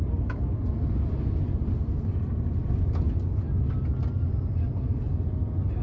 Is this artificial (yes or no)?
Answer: no